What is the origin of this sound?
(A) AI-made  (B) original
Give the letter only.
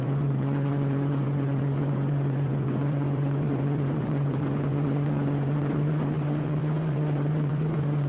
A